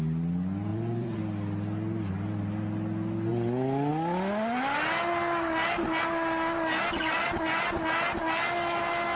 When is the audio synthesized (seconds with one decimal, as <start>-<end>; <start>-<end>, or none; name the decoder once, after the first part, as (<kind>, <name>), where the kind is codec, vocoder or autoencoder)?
0.7-1.2 (vocoder, Vocos)